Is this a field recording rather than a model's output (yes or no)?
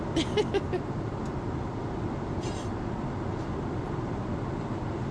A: yes